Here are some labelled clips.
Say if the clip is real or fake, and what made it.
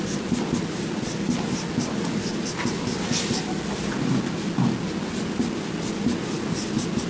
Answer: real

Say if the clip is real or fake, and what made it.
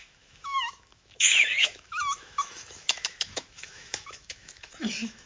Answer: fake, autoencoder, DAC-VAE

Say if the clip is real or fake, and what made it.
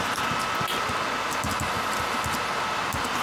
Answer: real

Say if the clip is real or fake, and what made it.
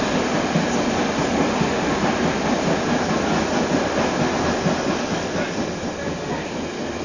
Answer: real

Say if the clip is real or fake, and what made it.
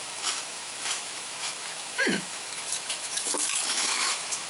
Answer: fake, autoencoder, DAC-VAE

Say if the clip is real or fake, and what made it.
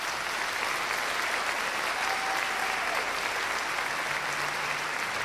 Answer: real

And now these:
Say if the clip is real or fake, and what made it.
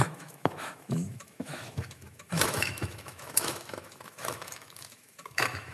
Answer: fake, autoencoder, DAC-VAE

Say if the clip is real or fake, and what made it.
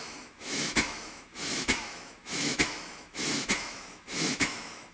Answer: fake, autoencoder, DAC-VAE